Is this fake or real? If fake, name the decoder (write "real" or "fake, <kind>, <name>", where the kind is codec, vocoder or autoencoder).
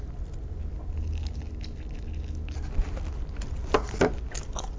real